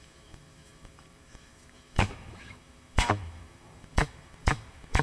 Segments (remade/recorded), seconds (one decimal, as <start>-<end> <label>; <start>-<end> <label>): 0.0-5.0 remade